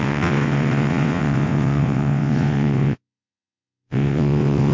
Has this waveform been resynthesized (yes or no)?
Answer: yes